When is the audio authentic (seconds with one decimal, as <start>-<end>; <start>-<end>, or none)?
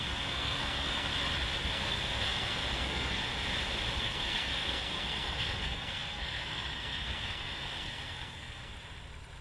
1.1-1.6; 3.2-4.0; 8.7-9.4